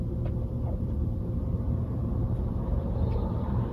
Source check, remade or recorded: remade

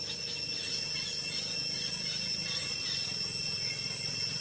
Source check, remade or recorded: recorded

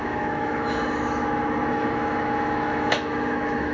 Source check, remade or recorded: remade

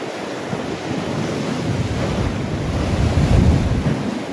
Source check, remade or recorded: recorded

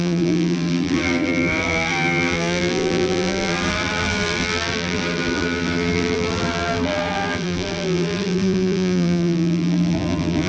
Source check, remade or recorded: remade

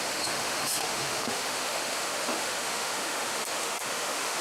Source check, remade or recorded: remade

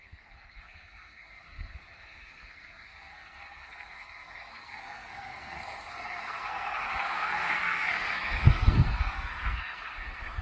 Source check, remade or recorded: remade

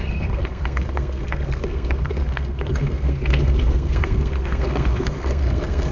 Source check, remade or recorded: remade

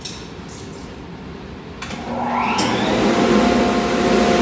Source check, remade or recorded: recorded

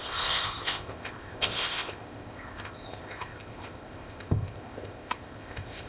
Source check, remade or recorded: remade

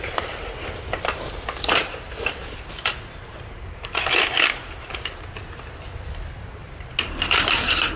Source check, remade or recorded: recorded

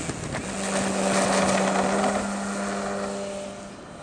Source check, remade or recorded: recorded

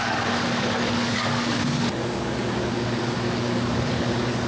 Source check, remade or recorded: remade